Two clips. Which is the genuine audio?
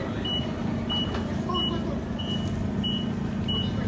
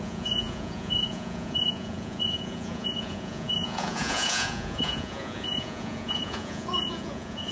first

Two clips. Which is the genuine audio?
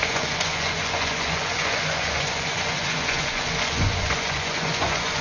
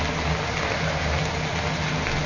second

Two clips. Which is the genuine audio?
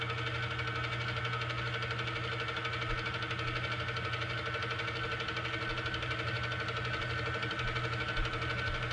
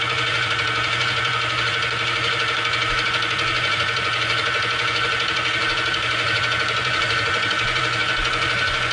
first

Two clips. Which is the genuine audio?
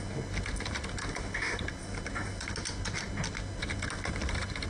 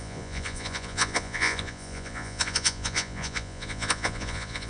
first